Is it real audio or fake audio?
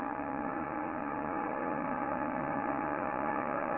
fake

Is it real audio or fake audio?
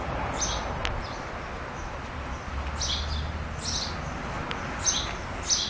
real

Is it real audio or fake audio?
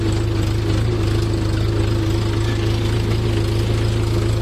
real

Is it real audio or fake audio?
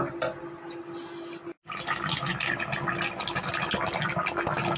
real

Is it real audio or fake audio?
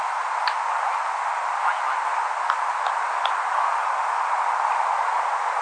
real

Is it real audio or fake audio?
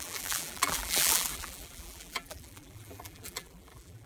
fake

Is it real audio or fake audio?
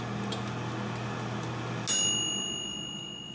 real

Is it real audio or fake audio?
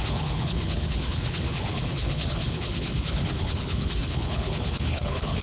fake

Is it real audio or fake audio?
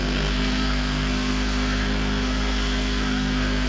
fake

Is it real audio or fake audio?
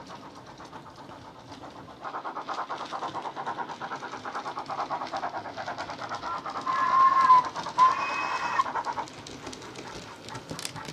real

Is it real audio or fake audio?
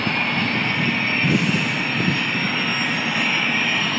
real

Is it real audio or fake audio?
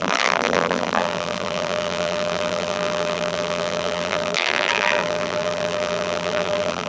fake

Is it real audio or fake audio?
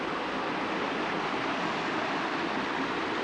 real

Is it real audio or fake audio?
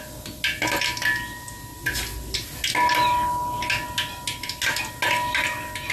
real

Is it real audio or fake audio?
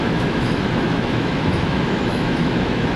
fake